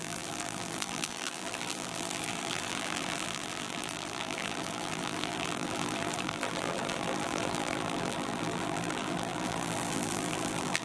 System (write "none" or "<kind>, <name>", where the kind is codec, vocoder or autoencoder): vocoder, BigVGAN v2